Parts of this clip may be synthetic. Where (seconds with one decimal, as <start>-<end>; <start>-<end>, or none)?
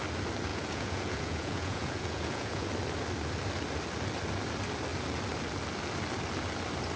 0.5-2.7